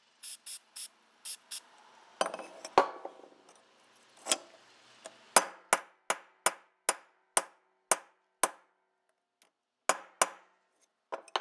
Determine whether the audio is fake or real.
real